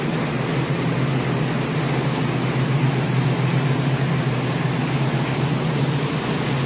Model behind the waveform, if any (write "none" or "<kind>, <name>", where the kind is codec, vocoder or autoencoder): none